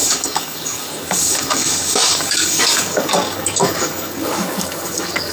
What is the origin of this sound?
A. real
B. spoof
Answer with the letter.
B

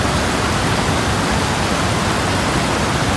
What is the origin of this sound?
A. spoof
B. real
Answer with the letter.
B